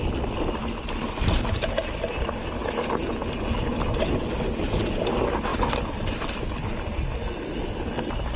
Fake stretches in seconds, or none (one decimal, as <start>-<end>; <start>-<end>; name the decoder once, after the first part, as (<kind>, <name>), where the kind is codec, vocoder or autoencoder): none